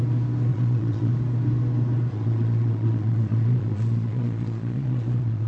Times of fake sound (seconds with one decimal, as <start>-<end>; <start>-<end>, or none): 0.5-1.1; 2.1-5.5